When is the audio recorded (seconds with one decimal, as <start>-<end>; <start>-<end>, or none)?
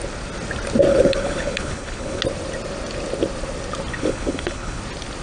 0.0-0.9; 2.2-3.9; 4.8-5.2